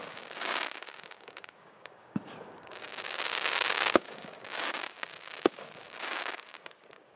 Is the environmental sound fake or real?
fake